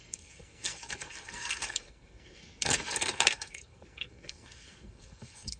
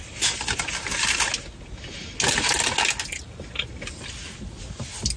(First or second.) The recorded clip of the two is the second